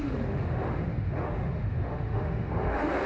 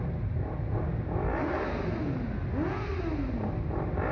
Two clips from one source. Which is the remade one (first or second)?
first